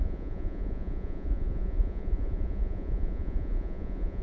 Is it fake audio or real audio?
fake